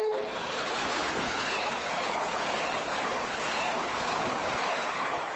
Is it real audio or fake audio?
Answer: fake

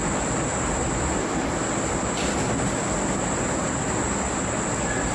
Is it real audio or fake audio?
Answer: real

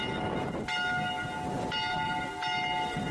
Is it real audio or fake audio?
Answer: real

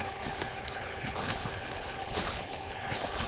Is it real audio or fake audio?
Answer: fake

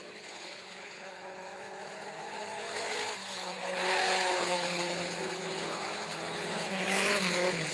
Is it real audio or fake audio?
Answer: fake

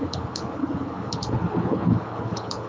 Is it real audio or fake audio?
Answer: fake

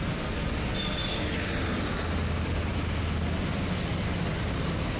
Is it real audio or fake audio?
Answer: real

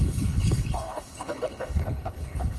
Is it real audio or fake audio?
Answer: fake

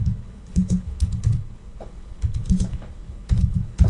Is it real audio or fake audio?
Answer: fake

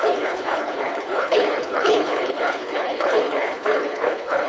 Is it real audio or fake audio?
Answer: fake